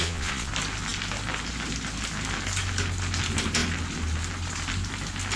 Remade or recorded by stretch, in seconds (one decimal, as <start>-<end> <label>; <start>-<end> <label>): 0.0-0.5 remade; 0.5-5.4 recorded